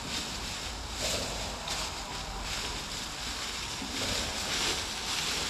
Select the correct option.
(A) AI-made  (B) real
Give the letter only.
B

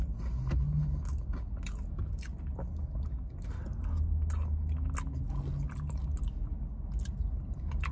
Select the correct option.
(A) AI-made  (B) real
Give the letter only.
B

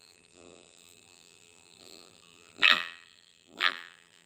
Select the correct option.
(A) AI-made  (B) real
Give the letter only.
A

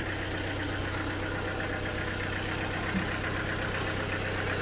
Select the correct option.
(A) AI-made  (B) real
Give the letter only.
B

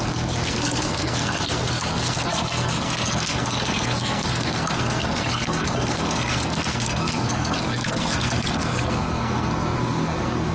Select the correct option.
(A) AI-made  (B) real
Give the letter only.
A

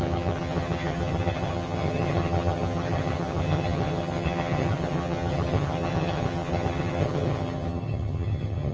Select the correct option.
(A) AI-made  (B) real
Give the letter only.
A